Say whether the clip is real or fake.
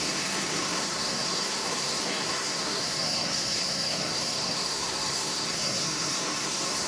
fake